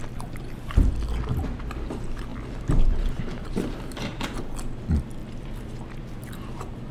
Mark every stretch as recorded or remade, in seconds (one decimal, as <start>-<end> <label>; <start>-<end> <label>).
0.0-2.3 recorded; 2.3-4.4 remade; 4.4-5.2 recorded; 5.2-6.9 remade